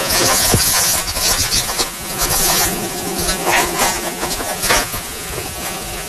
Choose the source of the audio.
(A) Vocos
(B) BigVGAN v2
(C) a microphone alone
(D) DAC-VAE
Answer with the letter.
A